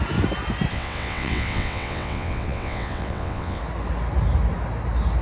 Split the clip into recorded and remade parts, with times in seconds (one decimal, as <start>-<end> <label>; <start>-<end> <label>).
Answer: 0.0-0.7 recorded; 0.7-3.6 remade; 3.6-5.2 recorded